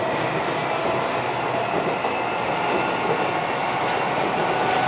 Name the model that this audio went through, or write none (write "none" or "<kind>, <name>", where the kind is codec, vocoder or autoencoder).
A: none